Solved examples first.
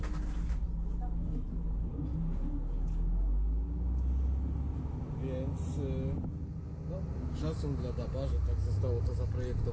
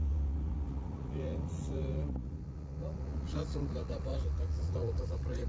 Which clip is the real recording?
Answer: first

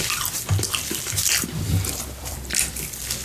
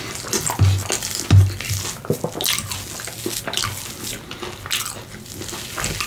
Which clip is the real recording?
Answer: second